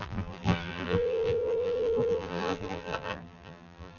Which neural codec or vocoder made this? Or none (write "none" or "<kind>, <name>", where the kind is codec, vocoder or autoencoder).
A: vocoder, BigVGAN v2